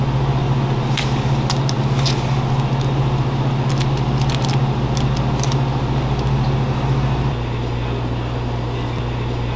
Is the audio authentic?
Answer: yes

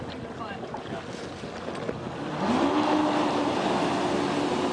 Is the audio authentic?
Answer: yes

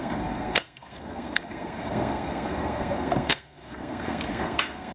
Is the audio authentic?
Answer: no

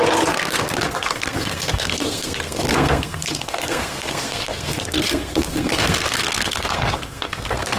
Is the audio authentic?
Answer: no